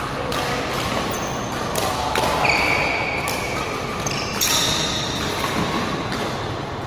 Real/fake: real